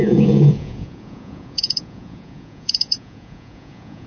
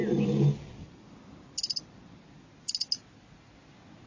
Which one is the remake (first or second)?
first